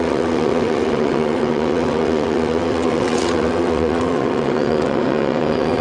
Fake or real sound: fake